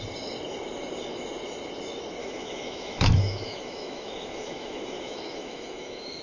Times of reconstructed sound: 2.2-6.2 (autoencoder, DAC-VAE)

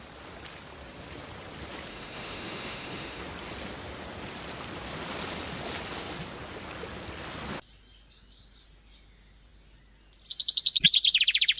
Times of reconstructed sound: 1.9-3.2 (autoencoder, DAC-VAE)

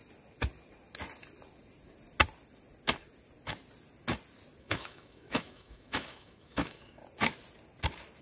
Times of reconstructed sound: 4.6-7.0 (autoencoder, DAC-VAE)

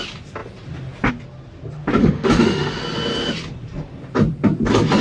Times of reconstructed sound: 2.0-2.8 (autoencoder, DAC-VAE)

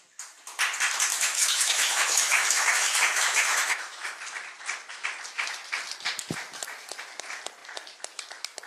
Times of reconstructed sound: 1.1-4.2 (autoencoder, DAC-VAE)

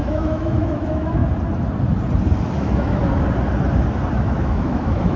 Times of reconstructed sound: 0.0-1.2 (autoencoder, DAC-VAE); 2.6-3.0; 4.1-5.2

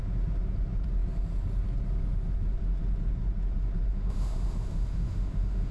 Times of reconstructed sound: 3.9-5.7 (autoencoder, DAC-VAE)